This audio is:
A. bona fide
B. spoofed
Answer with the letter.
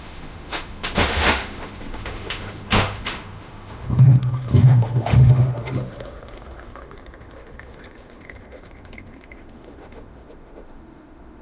B